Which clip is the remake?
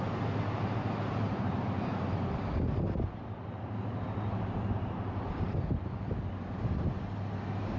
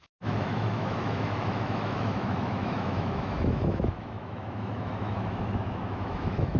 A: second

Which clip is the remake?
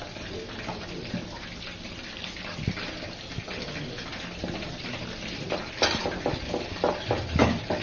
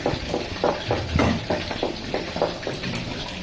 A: second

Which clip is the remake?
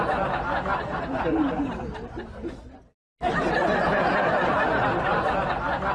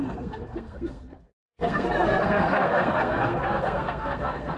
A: second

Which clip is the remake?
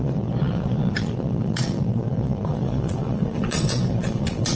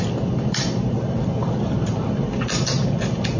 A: first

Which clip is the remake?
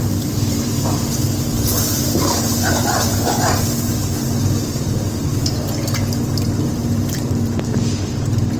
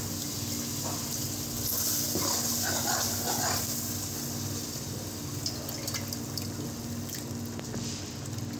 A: first